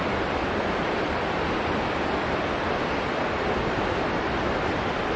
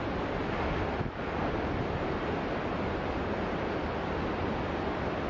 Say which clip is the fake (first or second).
first